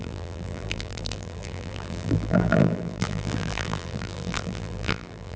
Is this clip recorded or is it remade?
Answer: remade